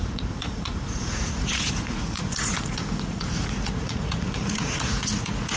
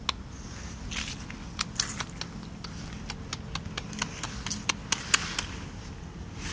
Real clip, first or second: second